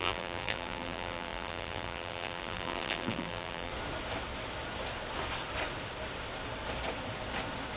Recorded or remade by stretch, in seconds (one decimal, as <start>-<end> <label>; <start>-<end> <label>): 0.0-3.7 remade; 3.7-7.8 recorded